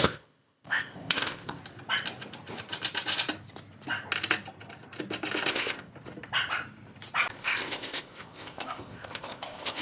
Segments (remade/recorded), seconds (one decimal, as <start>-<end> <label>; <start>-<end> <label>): 0.0-1.6 remade; 1.6-5.5 recorded; 5.5-5.9 remade; 5.9-7.3 recorded; 7.3-9.8 remade